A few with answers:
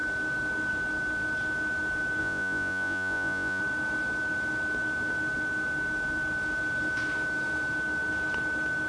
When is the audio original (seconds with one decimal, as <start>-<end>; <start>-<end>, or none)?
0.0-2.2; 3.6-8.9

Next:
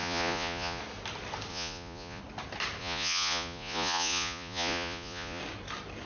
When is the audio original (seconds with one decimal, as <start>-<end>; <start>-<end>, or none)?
0.8-1.5; 2.2-2.8; 5.4-6.0

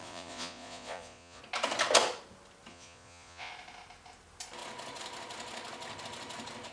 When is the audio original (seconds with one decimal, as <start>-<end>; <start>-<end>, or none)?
1.4-2.7; 3.5-6.7